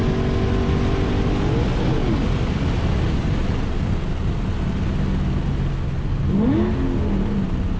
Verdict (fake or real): real